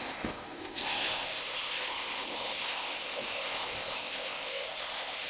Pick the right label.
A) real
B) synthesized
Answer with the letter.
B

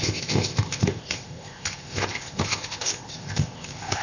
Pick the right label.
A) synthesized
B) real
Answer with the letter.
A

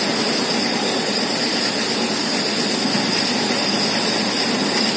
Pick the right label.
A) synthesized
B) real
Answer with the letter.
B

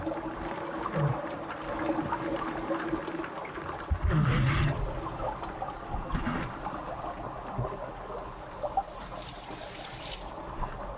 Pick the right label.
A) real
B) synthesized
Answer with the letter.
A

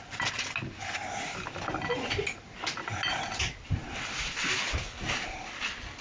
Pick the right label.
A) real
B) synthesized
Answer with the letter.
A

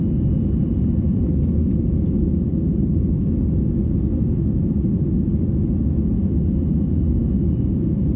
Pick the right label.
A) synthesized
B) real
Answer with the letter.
B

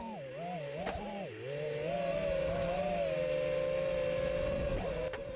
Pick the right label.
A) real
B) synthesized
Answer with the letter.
A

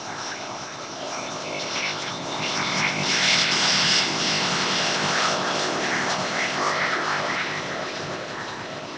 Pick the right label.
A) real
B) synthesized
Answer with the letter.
B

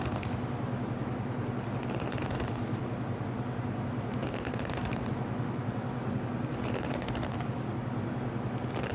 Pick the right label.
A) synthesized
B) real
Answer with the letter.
B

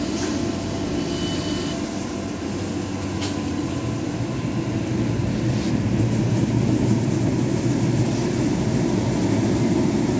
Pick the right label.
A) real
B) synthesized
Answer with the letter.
A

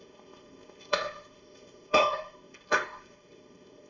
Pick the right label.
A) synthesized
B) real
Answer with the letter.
A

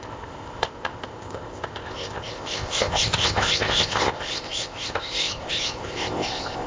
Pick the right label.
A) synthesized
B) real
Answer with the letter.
A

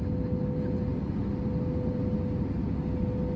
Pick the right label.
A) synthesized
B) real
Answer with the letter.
B